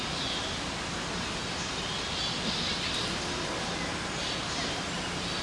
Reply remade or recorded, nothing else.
recorded